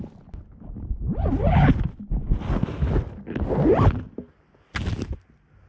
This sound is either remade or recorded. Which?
recorded